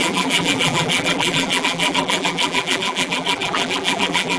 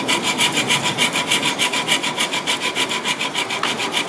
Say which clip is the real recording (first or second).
second